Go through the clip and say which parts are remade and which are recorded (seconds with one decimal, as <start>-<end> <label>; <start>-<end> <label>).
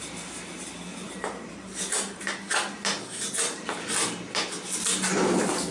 0.0-0.9 recorded; 0.9-1.9 remade; 1.9-5.7 recorded